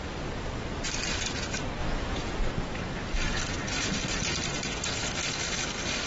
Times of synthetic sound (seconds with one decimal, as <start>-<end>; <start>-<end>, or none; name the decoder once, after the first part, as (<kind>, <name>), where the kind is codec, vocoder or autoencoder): 1.8-2.5 (vocoder, Vocos)